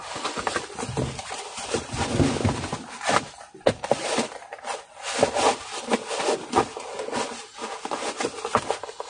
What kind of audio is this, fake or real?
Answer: real